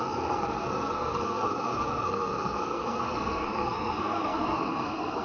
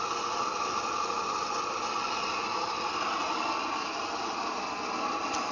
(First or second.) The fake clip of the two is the first